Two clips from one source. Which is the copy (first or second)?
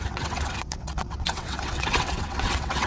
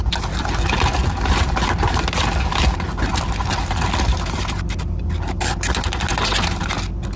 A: first